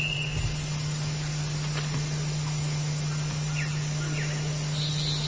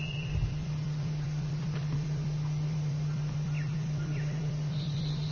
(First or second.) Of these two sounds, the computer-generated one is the second